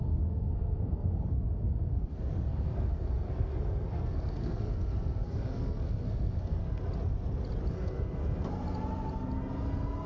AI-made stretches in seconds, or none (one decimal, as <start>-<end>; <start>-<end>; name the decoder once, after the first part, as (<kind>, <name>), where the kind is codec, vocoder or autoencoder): 0.0-6.6 (codec, SNAC); 7.7-8.2